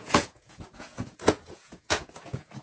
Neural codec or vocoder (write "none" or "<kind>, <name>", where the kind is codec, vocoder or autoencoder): vocoder, Vocos